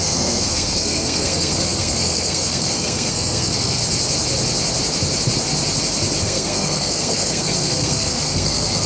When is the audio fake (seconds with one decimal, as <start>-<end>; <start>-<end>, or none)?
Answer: 0.0-3.8; 6.2-8.9